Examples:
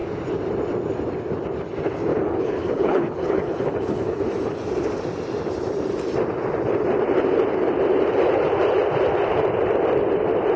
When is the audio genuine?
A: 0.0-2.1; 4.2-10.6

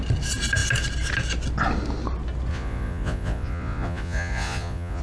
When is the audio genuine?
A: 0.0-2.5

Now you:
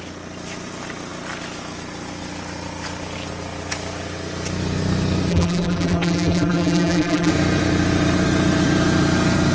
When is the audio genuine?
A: 0.0-5.3; 7.3-9.5

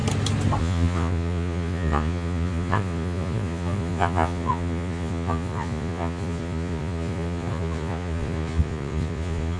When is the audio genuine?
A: 0.0-0.6

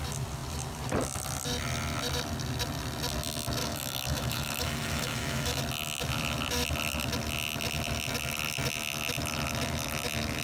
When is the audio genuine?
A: 0.0-3.6; 5.6-10.4

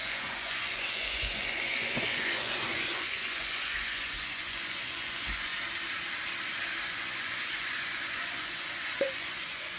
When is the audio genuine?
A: 5.5-6.9